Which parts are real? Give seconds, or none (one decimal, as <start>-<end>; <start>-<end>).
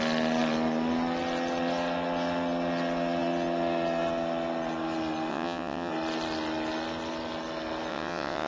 0.0-5.3; 5.9-7.9